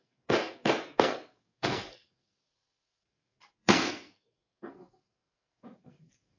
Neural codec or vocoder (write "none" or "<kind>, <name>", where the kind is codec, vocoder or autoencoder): codec, SNAC